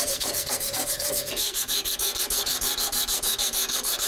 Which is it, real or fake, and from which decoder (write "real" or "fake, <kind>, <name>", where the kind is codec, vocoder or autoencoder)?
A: fake, codec, SNAC